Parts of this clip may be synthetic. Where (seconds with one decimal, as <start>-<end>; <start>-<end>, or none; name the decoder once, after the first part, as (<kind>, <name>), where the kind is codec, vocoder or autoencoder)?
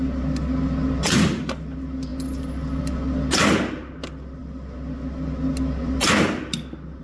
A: none